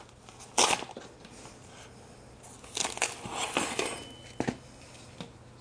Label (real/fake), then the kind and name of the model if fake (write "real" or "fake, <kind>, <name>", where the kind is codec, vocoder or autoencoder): real